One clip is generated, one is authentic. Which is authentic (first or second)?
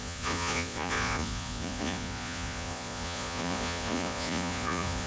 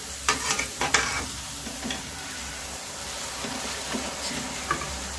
second